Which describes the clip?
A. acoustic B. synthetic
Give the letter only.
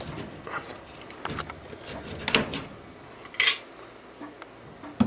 A